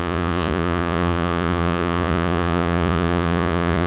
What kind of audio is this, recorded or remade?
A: remade